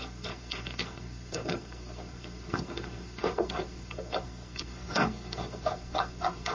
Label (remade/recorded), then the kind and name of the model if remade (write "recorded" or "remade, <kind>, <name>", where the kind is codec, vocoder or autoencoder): remade, codec, SNAC